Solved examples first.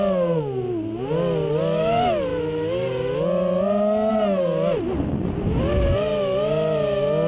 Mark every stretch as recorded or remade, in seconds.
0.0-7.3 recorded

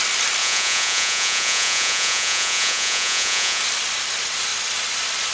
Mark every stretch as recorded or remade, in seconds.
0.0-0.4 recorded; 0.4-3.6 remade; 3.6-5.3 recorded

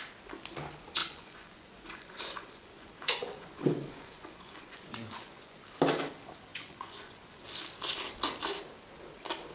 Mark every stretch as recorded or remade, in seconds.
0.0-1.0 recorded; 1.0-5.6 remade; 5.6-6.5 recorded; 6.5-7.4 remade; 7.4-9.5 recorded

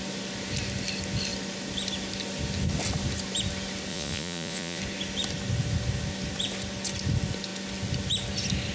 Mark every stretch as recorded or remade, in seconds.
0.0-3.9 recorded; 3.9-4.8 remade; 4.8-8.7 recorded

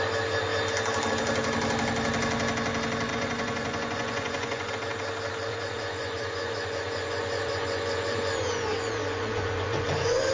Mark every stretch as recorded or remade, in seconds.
0.0-3.1 recorded; 3.1-4.7 remade; 4.7-5.5 recorded; 5.5-10.3 remade

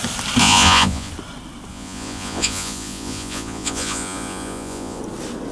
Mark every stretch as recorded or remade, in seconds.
0.0-0.4 recorded; 0.4-1.1 remade; 1.1-1.7 recorded; 1.7-5.0 remade; 5.0-5.5 recorded

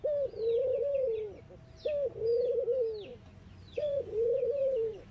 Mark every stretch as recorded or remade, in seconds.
0.0-0.7 recorded; 0.7-1.4 remade; 1.4-3.1 recorded; 3.1-5.1 remade